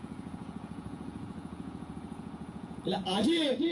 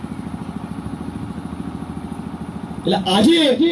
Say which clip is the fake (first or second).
first